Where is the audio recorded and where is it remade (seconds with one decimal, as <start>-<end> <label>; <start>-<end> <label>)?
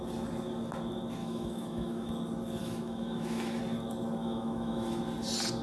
0.0-1.2 recorded; 1.2-2.1 remade; 2.1-2.6 recorded; 2.6-3.6 remade; 3.6-4.2 recorded; 4.2-5.0 remade; 5.0-5.6 recorded